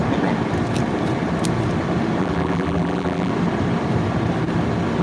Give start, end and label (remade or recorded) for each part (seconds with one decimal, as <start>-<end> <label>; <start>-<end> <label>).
0.0-2.2 recorded; 2.2-3.3 remade; 3.3-5.0 recorded